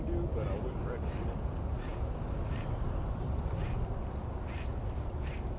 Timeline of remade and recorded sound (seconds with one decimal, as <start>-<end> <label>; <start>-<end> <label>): 0.0-5.6 recorded